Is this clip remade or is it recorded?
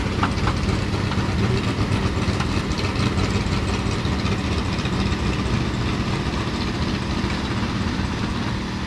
recorded